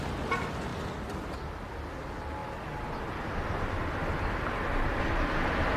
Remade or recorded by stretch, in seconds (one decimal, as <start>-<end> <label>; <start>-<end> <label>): 0.0-5.8 recorded